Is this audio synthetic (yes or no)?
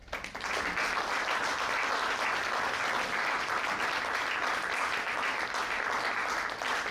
no